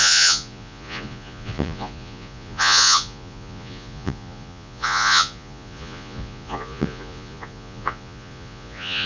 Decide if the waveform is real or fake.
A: fake